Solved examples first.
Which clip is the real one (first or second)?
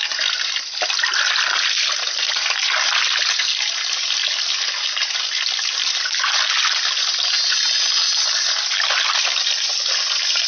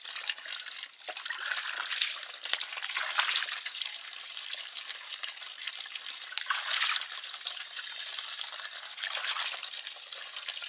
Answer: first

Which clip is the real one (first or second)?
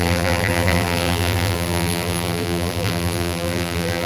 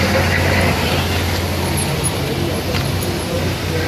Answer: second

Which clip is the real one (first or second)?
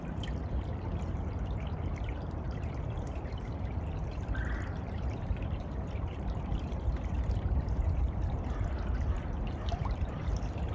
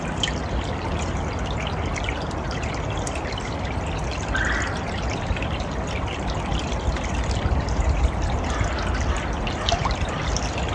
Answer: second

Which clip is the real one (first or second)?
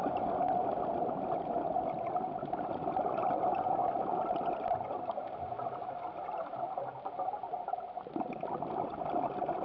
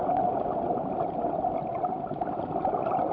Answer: first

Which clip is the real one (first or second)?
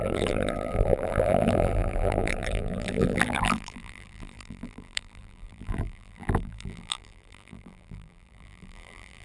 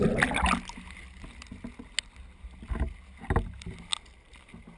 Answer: second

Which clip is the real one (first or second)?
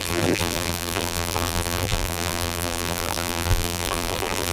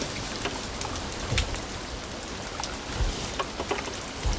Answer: second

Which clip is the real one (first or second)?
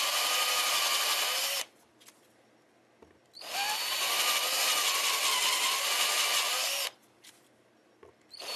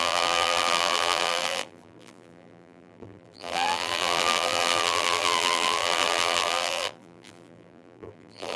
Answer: first